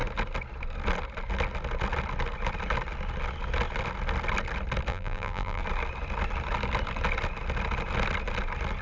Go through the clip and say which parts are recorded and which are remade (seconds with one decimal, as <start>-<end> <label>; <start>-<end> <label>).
0.0-4.9 recorded; 4.9-5.6 remade; 5.6-8.8 recorded